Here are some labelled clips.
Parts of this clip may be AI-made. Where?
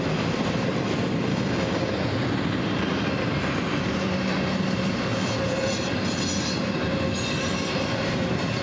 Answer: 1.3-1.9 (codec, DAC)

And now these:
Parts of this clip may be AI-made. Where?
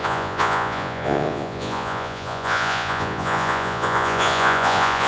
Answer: 0.0-5.1 (vocoder, Vocos)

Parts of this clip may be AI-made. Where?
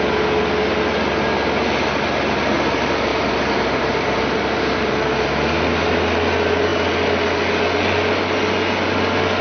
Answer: 3.1-4.9 (vocoder, BigVGAN v2)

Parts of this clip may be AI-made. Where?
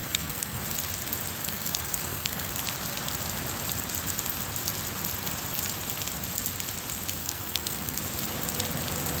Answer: 0.0-0.6 (codec, SNAC); 1.4-2.5; 7.2-8.0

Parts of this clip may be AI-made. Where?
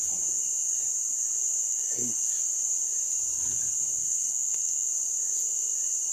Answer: 1.7-2.3 (codec, SNAC); 4.0-4.9